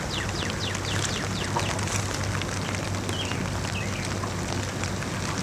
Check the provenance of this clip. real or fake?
real